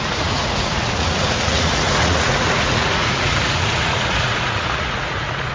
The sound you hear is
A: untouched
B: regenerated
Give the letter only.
B